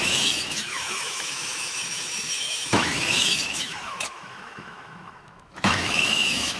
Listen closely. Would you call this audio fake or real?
fake